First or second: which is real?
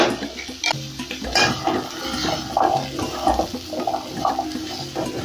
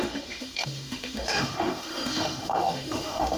first